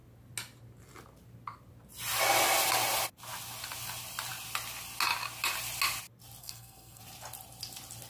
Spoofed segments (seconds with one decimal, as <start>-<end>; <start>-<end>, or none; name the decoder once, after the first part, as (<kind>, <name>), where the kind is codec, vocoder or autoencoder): 6.4-7.0 (codec, SNAC)